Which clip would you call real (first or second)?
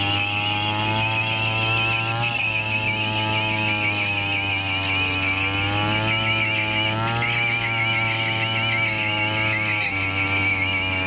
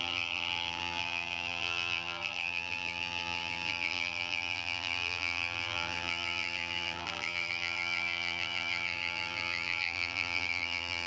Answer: first